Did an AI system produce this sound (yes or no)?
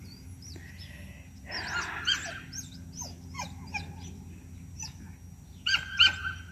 no